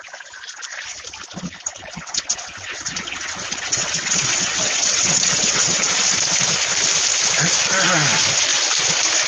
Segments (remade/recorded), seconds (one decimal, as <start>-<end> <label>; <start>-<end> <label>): 0.0-1.7 recorded; 1.7-5.9 remade; 5.9-9.3 recorded